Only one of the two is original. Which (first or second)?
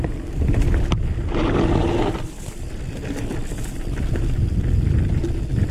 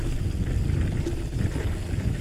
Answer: first